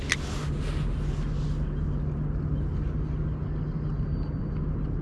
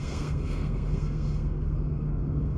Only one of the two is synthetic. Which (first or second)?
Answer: second